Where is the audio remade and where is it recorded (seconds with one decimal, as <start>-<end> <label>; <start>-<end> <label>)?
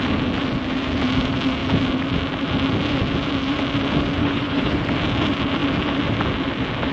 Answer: 0.0-4.2 recorded; 4.2-4.8 remade; 4.8-6.9 recorded